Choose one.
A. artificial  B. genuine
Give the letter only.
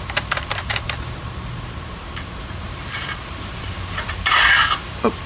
A